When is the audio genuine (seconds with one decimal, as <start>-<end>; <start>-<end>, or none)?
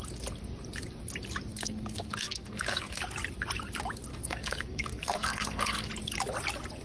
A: 0.0-1.5; 3.0-4.1; 5.9-6.8